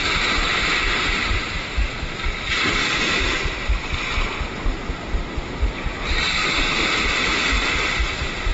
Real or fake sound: real